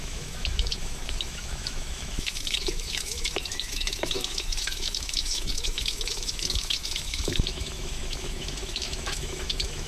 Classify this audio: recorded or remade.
remade